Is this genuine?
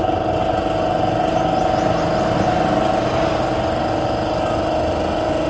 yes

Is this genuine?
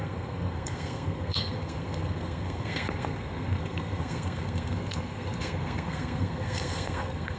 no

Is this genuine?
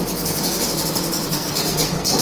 no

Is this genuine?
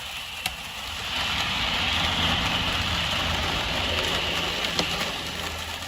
yes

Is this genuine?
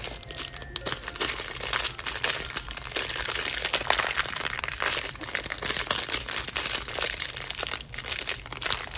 no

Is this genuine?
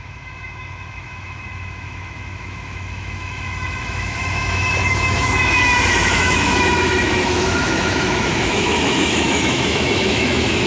no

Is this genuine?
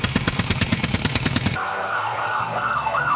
no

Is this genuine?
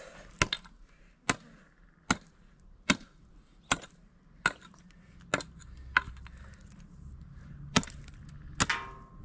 yes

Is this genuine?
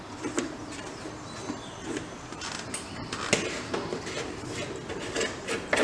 yes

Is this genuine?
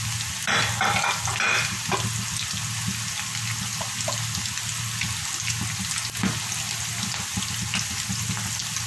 yes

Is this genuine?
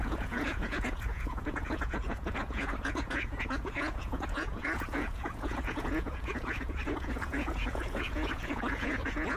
no